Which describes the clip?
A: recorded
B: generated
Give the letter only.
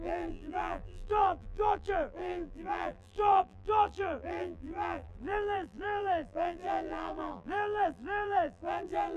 B